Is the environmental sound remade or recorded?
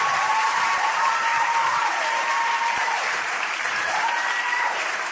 remade